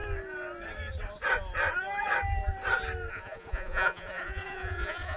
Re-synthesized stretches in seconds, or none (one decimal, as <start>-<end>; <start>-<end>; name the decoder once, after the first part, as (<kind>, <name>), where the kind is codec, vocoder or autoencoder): 3.1-5.2 (vocoder, Vocos)